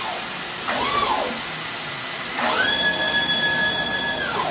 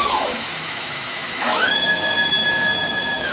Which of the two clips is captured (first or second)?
first